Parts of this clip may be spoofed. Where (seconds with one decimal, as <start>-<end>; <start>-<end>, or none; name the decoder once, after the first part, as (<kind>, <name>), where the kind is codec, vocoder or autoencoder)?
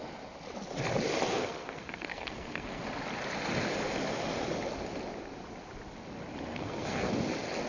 1.3-2.8 (codec, SNAC); 6.5-7.1